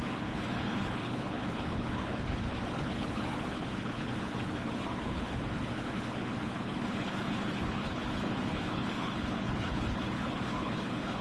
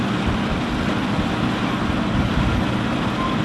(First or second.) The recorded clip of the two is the second